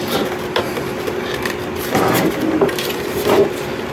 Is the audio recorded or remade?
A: recorded